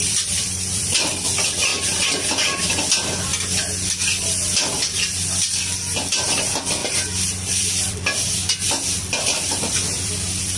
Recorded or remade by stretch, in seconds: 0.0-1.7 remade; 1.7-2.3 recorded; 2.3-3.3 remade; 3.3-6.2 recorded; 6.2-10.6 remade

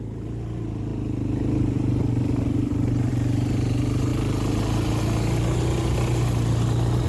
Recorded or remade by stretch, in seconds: 0.0-7.1 recorded

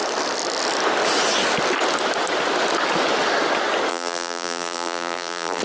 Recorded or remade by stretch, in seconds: 0.0-3.9 recorded; 3.9-5.6 remade

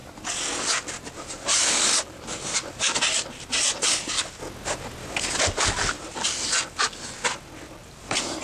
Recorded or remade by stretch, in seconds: 0.0-0.6 recorded; 0.6-4.4 remade; 4.4-5.4 recorded; 5.4-7.2 remade; 7.2-7.9 recorded; 7.9-8.4 remade